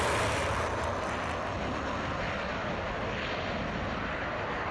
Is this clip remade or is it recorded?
recorded